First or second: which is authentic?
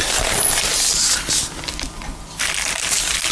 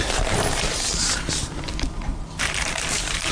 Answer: first